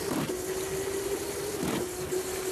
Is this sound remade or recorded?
recorded